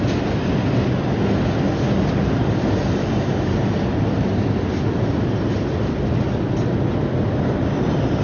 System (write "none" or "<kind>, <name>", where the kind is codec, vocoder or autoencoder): none